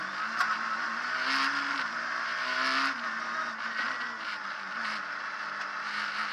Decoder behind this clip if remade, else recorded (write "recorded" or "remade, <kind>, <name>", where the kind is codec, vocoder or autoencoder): recorded